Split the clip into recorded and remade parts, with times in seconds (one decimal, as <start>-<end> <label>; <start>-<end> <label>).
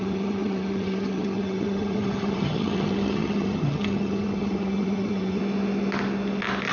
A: 0.0-5.4 remade; 5.4-6.7 recorded